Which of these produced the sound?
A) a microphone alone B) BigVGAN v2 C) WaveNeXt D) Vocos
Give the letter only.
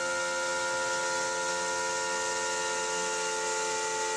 A